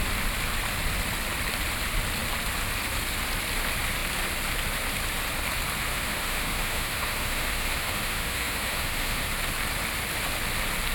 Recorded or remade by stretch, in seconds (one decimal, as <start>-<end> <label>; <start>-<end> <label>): 0.0-5.9 recorded; 5.9-9.3 remade; 9.3-10.9 recorded